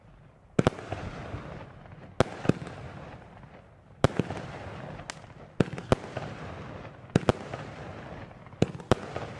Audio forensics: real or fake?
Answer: real